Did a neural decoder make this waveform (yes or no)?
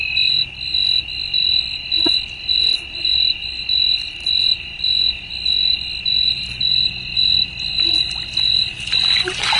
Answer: no